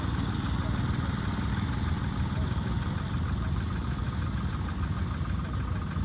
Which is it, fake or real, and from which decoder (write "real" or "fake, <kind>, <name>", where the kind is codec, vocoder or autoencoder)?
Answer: real